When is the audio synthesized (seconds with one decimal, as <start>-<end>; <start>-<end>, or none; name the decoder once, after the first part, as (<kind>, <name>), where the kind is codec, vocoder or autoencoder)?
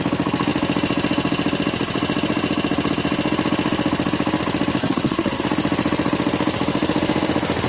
4.8-5.4 (codec, SNAC)